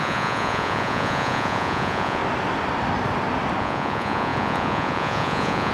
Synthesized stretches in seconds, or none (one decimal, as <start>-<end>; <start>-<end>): 0.0-2.2; 3.6-5.7